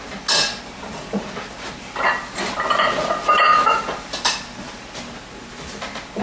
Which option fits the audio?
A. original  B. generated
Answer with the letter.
A